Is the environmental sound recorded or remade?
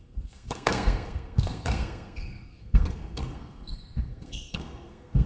remade